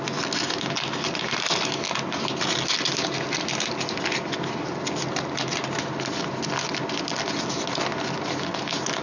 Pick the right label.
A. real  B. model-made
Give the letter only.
A